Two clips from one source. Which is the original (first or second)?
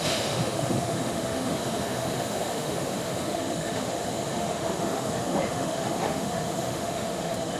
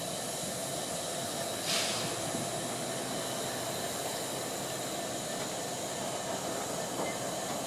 second